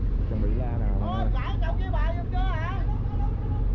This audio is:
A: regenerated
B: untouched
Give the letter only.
B